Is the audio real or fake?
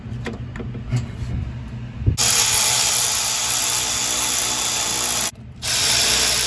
real